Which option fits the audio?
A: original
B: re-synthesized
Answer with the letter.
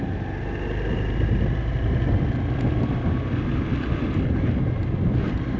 A